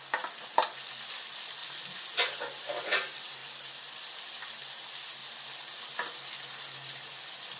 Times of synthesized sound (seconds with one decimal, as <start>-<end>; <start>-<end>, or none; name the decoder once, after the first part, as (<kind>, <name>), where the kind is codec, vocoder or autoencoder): 0.0-1.6 (vocoder, BigVGAN v2); 2.1-3.4; 4.4-5.2; 5.8-7.6